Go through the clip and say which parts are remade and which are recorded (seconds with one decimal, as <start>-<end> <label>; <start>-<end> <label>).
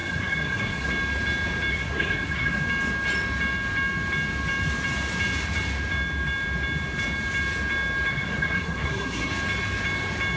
0.0-0.9 remade; 0.9-1.7 recorded; 1.7-2.6 remade; 2.6-8.1 recorded; 8.1-9.3 remade; 9.3-10.4 recorded